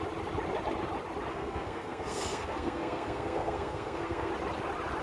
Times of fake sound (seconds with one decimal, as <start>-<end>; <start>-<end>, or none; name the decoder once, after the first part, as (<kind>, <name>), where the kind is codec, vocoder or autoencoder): 1.3-4.3 (codec, SNAC)